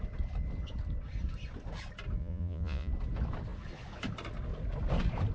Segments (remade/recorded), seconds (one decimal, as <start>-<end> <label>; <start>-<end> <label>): 0.0-2.2 recorded; 2.2-2.9 remade; 2.9-5.3 recorded